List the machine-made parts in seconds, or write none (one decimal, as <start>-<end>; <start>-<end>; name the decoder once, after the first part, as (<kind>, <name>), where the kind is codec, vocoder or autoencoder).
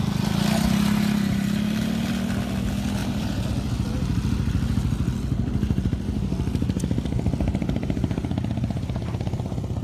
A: 3.0-3.5 (vocoder, BigVGAN v2)